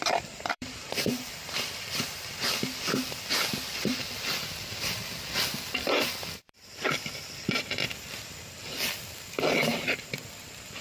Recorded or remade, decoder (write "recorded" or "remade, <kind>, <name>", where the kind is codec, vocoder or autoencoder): remade, vocoder, BigVGAN v2